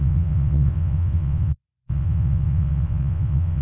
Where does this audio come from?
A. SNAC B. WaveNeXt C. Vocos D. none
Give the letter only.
B